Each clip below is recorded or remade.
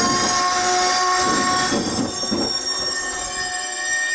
recorded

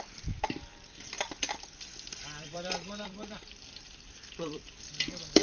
remade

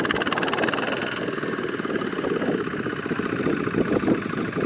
remade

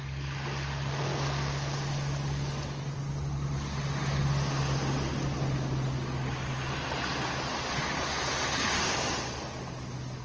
recorded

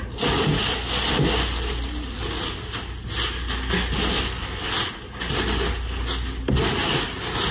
recorded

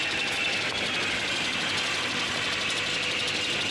recorded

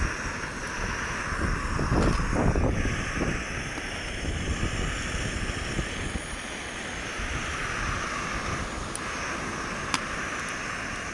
recorded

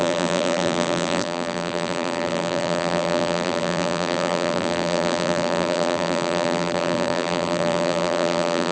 remade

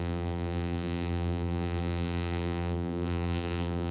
remade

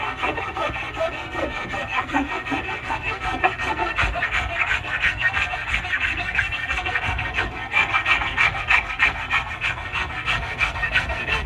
remade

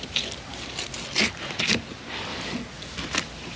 recorded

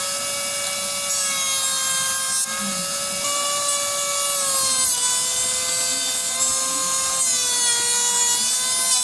recorded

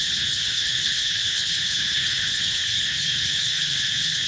remade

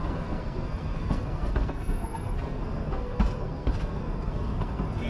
remade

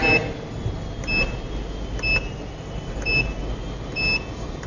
recorded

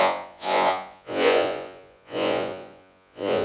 remade